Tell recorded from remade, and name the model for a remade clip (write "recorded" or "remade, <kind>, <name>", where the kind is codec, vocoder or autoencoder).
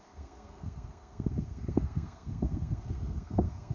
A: remade, codec, SNAC